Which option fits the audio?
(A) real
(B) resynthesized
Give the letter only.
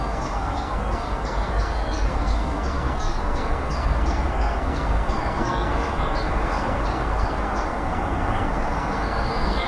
B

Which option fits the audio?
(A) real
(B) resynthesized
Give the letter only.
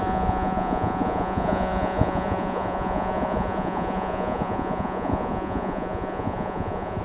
B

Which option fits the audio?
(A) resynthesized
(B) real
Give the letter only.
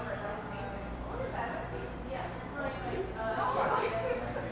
B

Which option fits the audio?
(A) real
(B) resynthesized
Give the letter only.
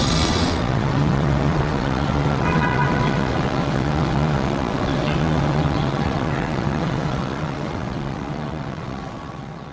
B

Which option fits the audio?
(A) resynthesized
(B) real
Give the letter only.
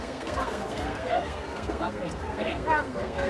A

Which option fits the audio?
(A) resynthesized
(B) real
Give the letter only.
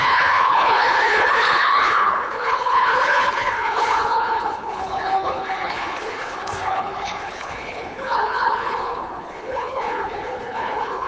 A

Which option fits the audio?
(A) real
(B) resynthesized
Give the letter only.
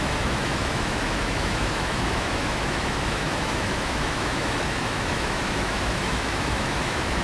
B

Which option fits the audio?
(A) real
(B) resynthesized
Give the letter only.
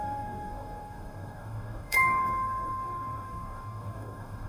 B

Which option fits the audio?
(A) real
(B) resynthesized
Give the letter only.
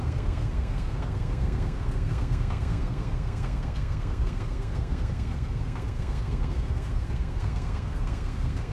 B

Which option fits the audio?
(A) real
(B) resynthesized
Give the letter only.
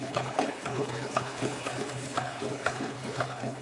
B